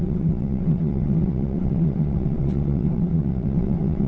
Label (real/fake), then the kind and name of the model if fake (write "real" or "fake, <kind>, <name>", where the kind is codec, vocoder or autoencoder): fake, vocoder, WaveNeXt